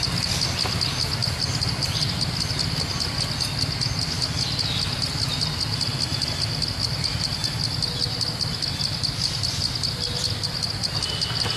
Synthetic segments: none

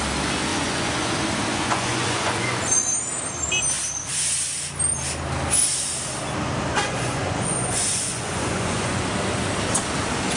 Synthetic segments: 0.5-1.1 (vocoder, Vocos); 1.5-2.8; 6.7-9.0

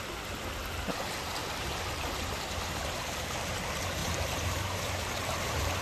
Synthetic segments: 4.0-5.8 (vocoder, BigVGAN v2)

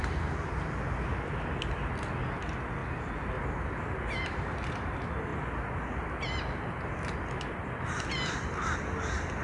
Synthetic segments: none

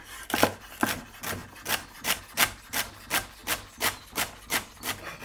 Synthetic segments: 1.4-2.2 (vocoder, BigVGAN v2); 3.4-5.2

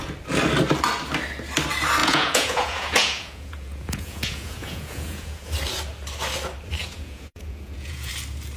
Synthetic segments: 2.0-5.5 (vocoder, Vocos); 6.8-8.1

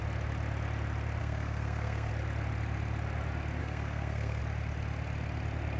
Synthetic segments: 1.2-2.1 (codec, SNAC); 3.6-4.4